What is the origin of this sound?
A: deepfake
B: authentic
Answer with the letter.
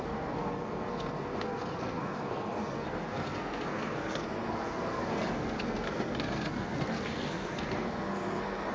A